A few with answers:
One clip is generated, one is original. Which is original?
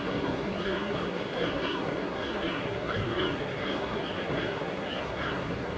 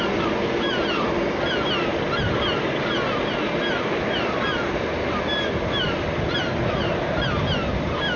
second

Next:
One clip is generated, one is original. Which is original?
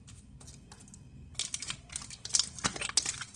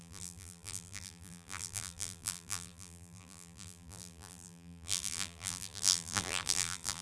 first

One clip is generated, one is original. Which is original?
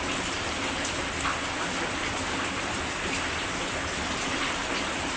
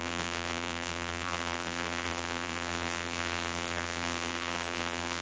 first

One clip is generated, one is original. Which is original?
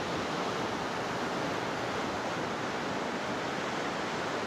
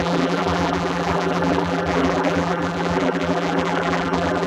first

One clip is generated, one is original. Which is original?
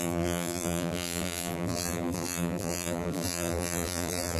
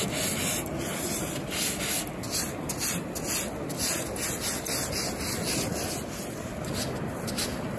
second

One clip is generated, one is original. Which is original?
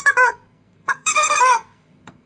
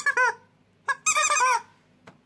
second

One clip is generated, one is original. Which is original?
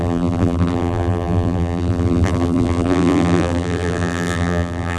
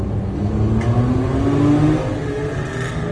second